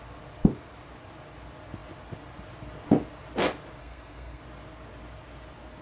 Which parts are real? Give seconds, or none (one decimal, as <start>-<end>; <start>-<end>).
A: 0.0-3.8; 4.4-5.8